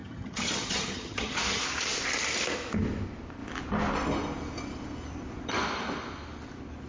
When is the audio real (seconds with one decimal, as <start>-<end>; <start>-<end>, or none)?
1.6-6.9